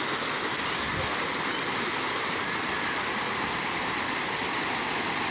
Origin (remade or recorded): recorded